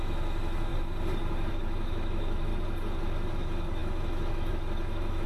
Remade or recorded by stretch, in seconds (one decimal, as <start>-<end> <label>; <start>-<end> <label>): 0.0-0.7 remade; 0.7-1.5 recorded; 1.5-2.5 remade; 2.5-3.3 recorded; 3.3-5.3 remade